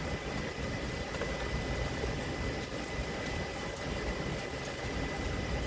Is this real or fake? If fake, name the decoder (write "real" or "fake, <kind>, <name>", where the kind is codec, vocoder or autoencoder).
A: real